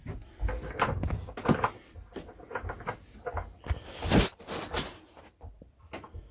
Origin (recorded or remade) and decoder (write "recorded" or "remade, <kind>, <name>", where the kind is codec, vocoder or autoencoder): recorded